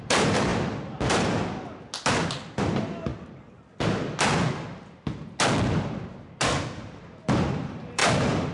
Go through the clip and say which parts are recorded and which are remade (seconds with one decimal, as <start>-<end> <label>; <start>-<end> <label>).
0.0-1.4 remade; 1.4-2.6 recorded; 2.6-3.1 remade; 3.1-6.8 recorded; 6.8-8.5 remade